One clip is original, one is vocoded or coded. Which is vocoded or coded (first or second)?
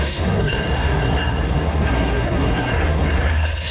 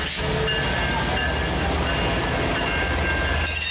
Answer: first